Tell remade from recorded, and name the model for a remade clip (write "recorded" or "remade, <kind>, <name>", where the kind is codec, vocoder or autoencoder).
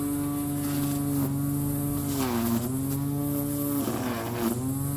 recorded